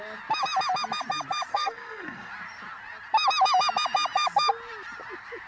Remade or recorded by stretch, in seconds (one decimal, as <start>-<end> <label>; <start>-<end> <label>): 0.0-1.5 recorded; 1.5-2.3 remade; 2.3-5.5 recorded